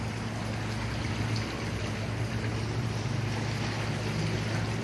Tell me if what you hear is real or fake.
real